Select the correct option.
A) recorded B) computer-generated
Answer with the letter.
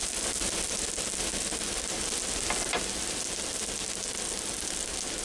A